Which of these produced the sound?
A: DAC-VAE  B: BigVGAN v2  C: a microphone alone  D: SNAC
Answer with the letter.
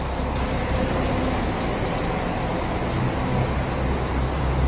C